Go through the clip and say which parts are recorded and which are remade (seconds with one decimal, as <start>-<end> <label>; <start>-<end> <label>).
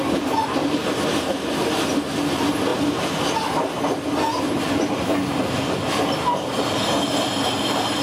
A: 0.0-8.0 recorded